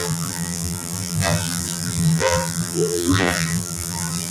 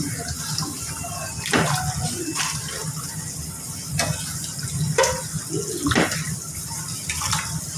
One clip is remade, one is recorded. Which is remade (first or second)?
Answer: first